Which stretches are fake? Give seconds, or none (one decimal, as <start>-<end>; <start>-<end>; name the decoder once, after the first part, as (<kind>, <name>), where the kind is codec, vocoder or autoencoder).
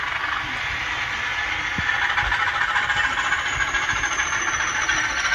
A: none